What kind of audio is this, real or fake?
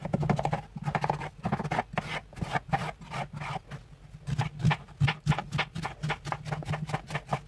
real